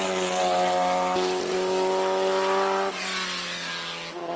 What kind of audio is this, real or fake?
real